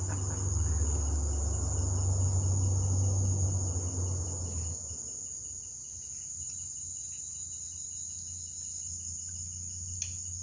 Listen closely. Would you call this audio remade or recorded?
recorded